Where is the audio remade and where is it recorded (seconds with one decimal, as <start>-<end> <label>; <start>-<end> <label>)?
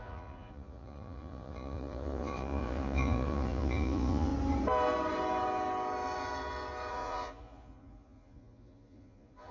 0.0-4.3 remade; 4.3-6.9 recorded; 6.9-9.5 remade